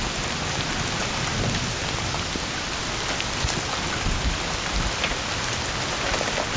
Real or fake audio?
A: real